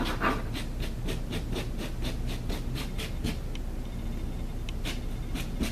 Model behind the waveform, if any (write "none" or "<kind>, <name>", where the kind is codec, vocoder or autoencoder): none